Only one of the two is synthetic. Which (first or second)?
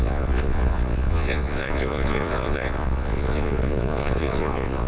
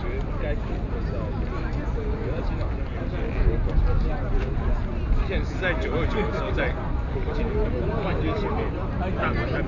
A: first